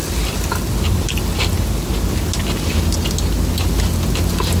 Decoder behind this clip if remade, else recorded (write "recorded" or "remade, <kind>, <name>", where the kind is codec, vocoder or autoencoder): recorded